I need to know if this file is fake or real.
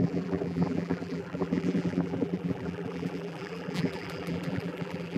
fake